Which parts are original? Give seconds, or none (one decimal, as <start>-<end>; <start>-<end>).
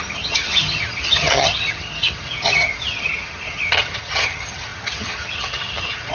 none